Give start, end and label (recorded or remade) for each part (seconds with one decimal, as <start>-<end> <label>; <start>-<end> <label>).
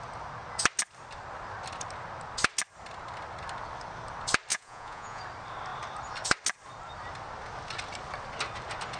0.0-4.5 recorded; 4.5-5.2 remade; 5.2-9.0 recorded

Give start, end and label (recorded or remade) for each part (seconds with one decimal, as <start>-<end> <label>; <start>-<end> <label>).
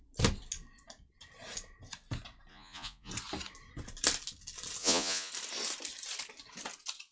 0.0-2.5 recorded; 2.5-3.1 remade; 3.1-4.8 recorded; 4.8-5.3 remade; 5.3-7.1 recorded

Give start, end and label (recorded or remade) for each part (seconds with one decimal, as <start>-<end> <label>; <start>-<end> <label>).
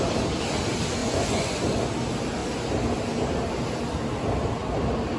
0.0-1.0 recorded; 1.0-1.8 remade; 1.8-5.2 recorded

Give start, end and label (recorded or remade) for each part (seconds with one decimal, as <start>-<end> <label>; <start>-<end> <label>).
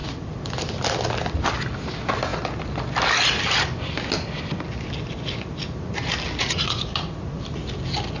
0.0-6.4 recorded; 6.4-7.4 remade; 7.4-8.2 recorded